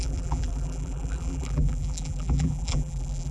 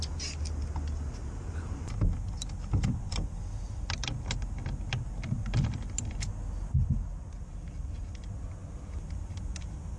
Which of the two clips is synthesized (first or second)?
first